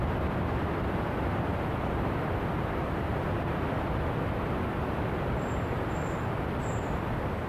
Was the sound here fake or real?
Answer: real